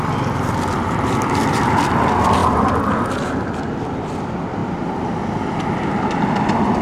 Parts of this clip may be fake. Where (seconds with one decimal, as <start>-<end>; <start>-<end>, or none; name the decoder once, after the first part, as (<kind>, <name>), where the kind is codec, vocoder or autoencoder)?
none